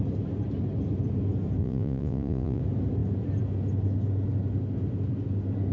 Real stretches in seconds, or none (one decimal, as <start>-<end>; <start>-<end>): 0.0-1.6; 2.6-5.7

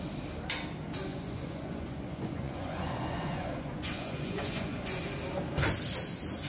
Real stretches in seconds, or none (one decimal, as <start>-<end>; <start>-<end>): 0.0-1.1; 5.0-6.5

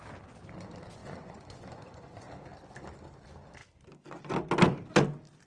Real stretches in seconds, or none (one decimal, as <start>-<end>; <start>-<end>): 0.0-1.0; 2.3-5.5

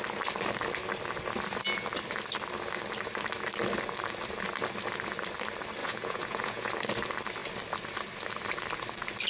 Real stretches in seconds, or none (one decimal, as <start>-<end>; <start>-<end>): 0.0-5.8; 6.7-9.3